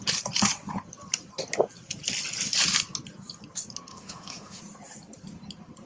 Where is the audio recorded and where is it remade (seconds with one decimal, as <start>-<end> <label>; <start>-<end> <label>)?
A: 0.0-3.9 recorded; 3.9-4.6 remade; 4.6-5.9 recorded